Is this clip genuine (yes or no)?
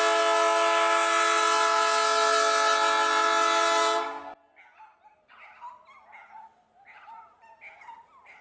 yes